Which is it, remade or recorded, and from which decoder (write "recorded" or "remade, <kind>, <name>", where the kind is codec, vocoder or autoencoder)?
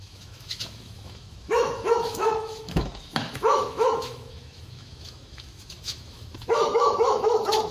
remade, autoencoder, DAC-VAE